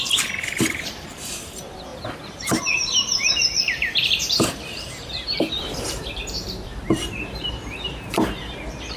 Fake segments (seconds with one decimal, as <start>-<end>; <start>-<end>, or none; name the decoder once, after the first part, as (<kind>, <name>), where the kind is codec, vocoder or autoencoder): 0.0-9.0 (vocoder, BigVGAN v2)